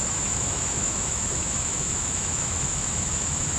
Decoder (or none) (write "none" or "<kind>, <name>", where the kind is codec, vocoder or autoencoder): autoencoder, DAC-VAE